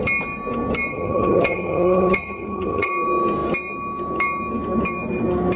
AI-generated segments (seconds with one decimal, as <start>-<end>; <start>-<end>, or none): 0.9-2.9